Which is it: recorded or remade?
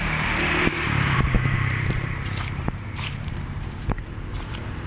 remade